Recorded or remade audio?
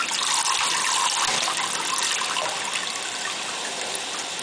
recorded